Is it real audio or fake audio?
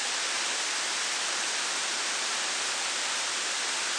real